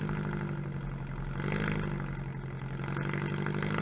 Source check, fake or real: real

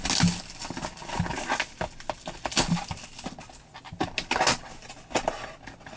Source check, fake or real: real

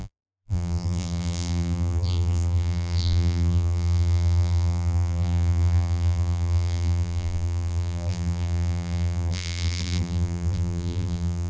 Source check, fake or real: fake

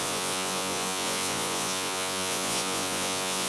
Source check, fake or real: fake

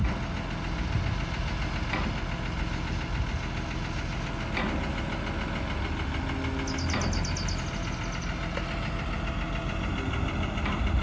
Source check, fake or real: real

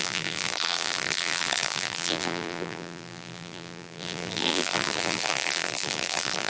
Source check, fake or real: fake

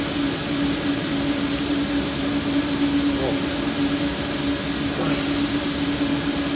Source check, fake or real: real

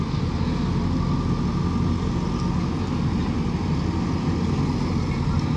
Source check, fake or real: real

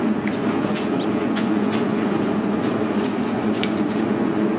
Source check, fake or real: fake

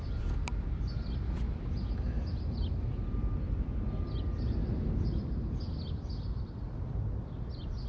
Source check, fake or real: real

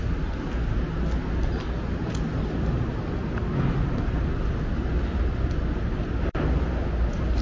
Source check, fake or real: real